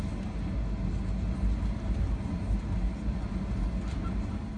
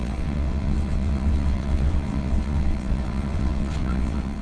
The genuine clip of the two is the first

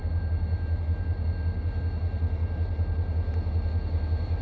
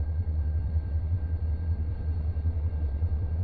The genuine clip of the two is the first